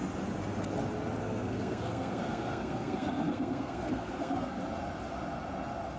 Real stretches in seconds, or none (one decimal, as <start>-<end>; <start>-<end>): 0.0-1.2; 4.6-6.0